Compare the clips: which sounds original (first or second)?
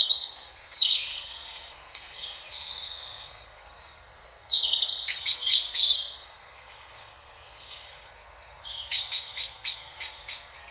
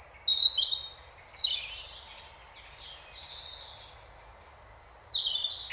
second